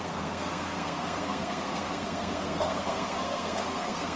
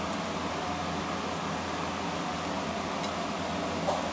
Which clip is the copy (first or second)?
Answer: first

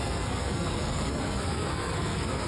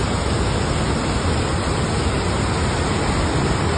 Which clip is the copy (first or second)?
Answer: first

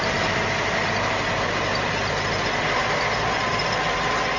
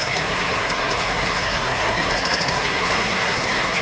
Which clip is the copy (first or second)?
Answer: second